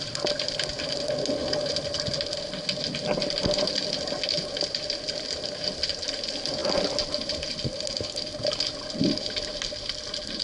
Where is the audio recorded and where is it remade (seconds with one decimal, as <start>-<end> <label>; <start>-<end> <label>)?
0.0-10.4 recorded